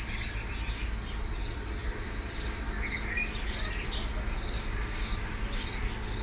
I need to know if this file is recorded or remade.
recorded